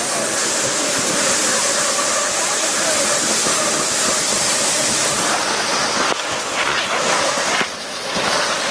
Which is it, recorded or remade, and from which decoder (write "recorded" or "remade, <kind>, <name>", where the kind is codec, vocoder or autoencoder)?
recorded